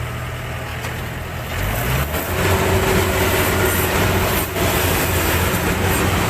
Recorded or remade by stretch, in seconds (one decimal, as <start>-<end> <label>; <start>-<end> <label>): 0.0-6.3 recorded